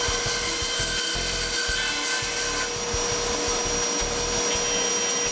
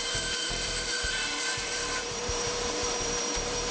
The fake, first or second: second